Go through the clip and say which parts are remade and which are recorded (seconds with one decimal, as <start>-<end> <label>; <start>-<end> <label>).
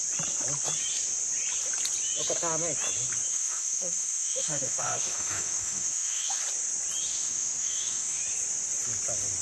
0.0-3.3 recorded; 3.3-6.4 remade; 6.4-7.1 recorded; 7.1-8.2 remade; 8.2-9.4 recorded